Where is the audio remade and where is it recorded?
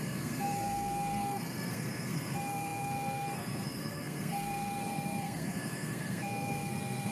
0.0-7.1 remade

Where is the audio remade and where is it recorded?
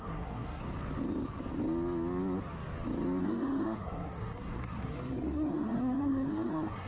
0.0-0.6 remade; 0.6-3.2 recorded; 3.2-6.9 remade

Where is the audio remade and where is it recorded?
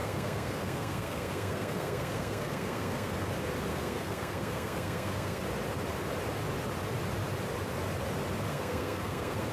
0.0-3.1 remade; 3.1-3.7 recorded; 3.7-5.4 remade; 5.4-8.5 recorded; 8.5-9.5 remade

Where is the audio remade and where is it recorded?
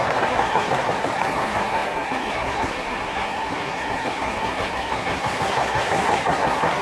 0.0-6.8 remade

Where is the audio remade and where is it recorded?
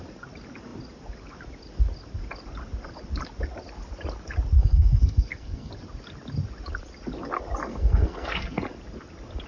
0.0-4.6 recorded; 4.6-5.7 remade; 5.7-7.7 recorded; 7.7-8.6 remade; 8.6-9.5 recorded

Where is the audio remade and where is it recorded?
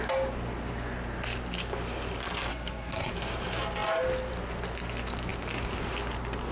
0.0-2.5 recorded; 2.5-3.1 remade; 3.1-6.5 recorded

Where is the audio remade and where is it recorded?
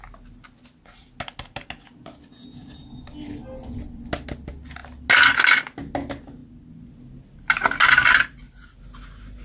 0.0-9.4 recorded